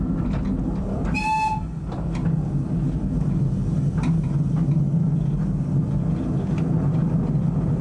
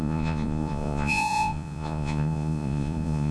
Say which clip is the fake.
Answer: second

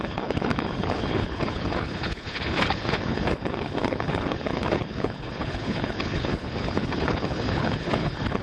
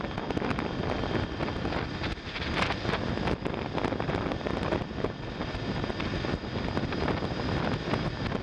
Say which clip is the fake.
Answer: first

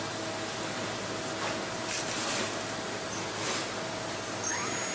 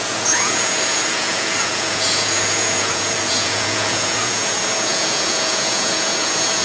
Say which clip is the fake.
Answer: second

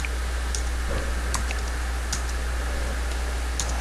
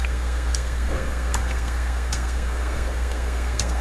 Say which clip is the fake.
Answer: second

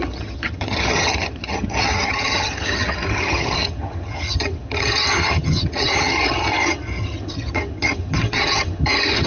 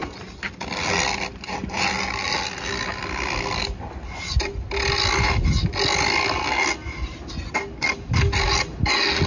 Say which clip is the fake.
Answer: first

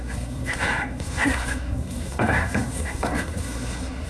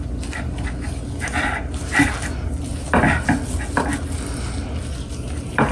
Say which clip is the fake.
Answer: first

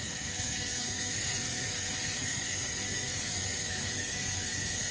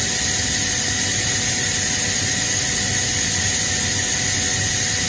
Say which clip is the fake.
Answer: first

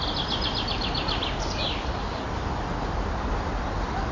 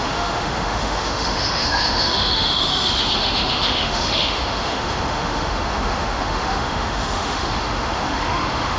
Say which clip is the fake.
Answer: second